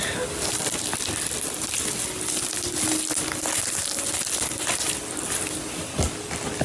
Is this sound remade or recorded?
recorded